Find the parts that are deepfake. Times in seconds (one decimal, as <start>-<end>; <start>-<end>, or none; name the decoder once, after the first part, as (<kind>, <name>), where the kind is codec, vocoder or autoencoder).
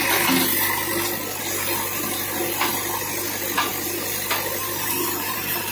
4.6-5.7 (vocoder, BigVGAN v2)